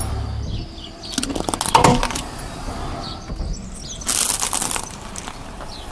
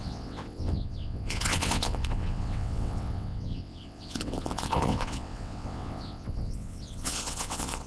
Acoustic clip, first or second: first